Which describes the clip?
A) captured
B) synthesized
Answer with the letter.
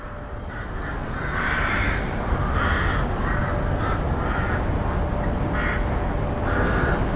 A